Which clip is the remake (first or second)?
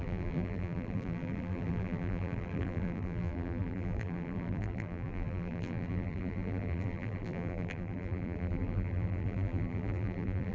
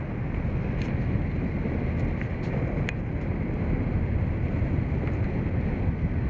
first